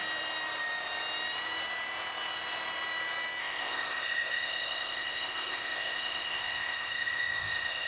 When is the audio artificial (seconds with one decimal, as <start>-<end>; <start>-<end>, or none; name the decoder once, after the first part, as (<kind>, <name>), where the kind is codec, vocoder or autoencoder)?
3.4-7.9 (codec, ZipCodec)